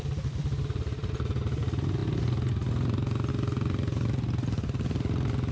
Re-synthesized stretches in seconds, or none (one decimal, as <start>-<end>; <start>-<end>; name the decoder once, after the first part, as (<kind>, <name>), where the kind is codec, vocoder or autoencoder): none